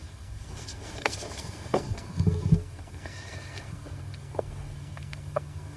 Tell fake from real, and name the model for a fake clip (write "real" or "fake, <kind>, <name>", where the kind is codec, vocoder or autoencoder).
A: fake, codec, SNAC